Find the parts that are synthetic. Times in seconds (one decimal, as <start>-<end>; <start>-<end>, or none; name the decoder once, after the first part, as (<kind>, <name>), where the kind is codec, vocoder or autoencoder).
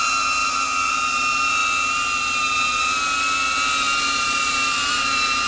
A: none